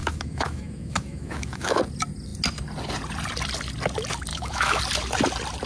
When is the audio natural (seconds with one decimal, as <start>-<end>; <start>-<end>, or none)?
1.8-4.3; 4.8-5.7